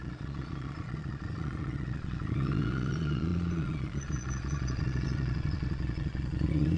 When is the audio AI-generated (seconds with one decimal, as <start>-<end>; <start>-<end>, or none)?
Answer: 0.0-6.8